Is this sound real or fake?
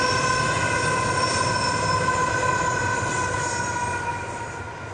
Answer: real